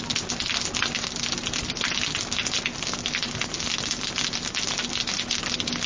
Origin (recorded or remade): recorded